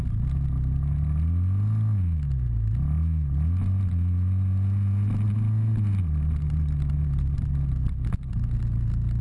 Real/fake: real